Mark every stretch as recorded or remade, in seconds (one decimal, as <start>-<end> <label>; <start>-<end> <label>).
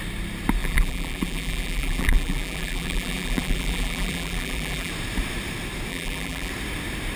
0.0-0.6 recorded; 0.6-4.9 remade; 4.9-5.9 recorded; 5.9-6.5 remade; 6.5-7.2 recorded